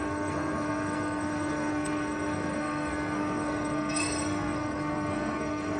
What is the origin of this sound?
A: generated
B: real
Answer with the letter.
A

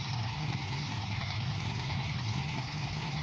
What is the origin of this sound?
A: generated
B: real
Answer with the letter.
A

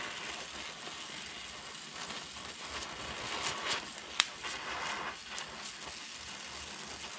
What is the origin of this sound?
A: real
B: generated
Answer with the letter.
A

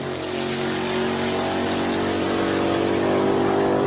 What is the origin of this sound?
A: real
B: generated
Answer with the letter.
A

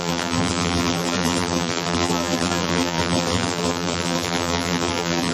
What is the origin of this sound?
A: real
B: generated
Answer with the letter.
B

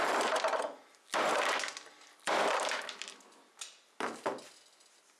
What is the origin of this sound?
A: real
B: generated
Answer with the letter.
A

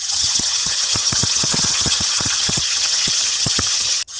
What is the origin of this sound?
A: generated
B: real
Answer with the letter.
A